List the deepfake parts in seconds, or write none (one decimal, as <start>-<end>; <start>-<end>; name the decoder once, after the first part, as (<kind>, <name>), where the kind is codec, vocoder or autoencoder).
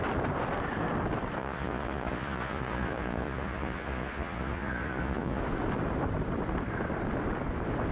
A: 1.4-5.4 (vocoder, Vocos)